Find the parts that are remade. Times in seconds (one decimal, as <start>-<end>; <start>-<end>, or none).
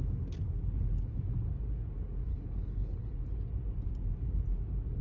2.3-3.1